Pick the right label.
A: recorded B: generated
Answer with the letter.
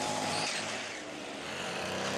B